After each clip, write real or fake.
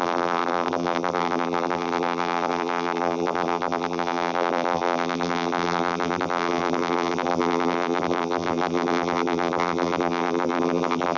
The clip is fake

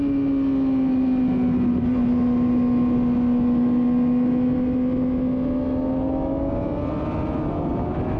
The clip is real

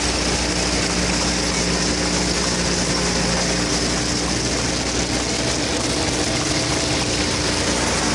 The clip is real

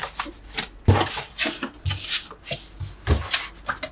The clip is real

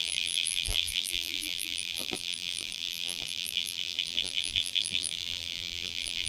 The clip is fake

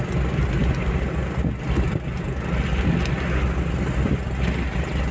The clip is real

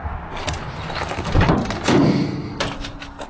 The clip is real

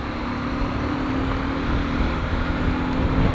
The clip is real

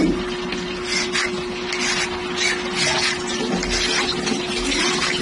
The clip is real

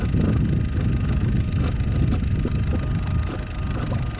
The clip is real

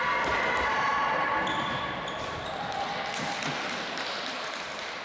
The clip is fake